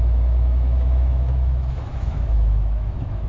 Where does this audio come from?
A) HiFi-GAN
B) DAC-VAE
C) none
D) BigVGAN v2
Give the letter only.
B